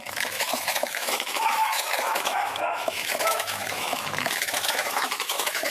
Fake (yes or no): yes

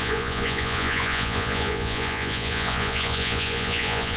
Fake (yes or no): yes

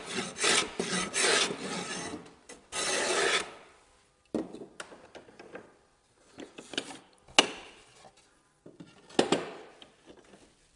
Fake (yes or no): no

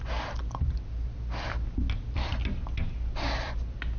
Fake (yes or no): no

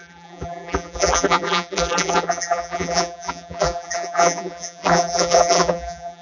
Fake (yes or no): yes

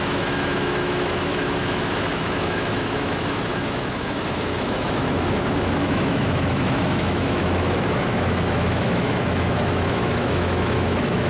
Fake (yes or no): yes